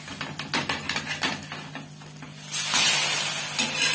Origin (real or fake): real